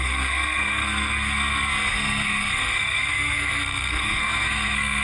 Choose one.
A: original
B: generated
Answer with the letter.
B